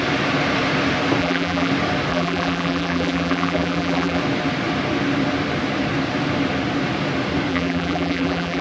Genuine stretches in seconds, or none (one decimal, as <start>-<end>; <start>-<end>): 0.0-1.2; 1.7-2.1; 4.2-7.5